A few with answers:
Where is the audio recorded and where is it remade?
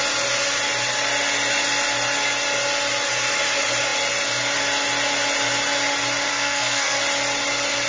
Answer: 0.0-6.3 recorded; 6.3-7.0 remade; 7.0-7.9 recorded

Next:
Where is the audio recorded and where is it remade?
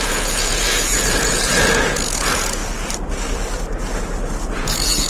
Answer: 0.0-2.6 remade; 2.6-4.5 recorded; 4.5-5.1 remade